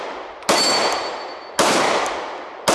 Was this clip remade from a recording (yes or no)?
no